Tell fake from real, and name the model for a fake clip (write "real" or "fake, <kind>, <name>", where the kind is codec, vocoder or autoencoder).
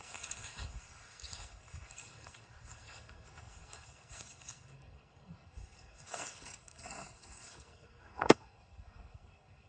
fake, codec, SNAC